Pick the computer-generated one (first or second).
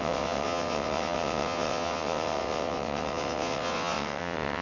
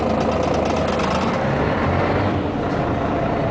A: first